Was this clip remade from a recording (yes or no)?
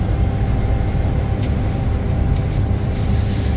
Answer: no